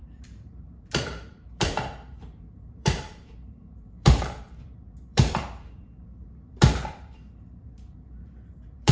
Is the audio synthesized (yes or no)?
yes